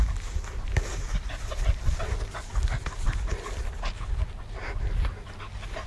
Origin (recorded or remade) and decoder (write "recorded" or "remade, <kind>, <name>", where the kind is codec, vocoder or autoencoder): recorded